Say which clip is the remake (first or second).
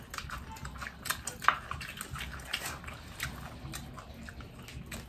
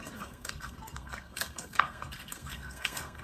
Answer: second